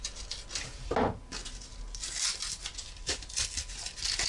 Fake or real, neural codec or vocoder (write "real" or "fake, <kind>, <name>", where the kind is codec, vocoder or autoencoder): real